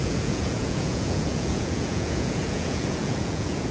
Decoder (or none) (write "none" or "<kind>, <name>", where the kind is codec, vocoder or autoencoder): vocoder, Vocos